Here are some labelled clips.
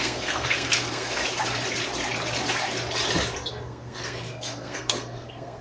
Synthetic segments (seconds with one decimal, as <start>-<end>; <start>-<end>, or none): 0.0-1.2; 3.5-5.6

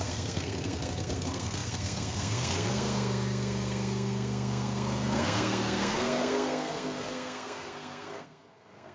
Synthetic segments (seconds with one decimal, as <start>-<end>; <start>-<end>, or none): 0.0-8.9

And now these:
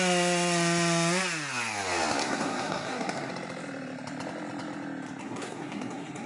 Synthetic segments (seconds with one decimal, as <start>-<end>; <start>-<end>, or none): 2.2-3.3; 5.2-6.3

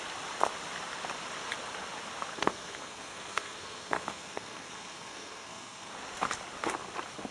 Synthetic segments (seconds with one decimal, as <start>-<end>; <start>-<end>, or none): 2.3-5.9

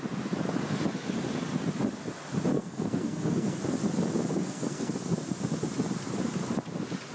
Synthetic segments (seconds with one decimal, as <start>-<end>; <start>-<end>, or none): 2.5-3.6; 4.3-4.9

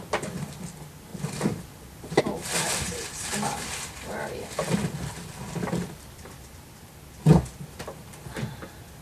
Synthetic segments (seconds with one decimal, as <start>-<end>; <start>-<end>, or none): none

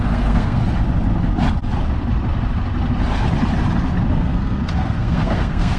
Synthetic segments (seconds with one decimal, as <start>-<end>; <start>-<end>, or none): 0.0-0.6; 4.1-5.8